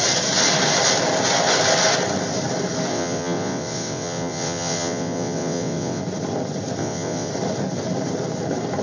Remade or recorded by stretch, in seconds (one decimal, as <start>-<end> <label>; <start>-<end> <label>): 0.0-2.9 recorded; 2.9-6.0 remade; 6.0-6.8 recorded; 6.8-7.3 remade; 7.3-8.8 recorded